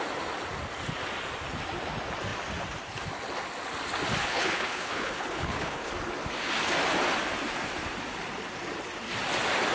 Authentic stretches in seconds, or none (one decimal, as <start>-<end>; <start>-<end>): 0.0-4.2; 5.9-9.7